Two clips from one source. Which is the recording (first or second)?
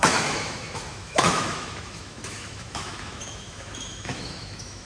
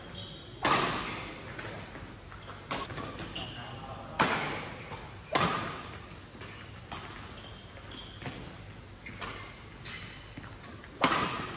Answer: second